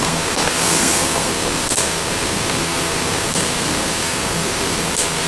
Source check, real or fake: fake